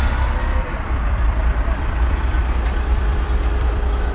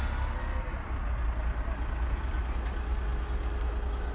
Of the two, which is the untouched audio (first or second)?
second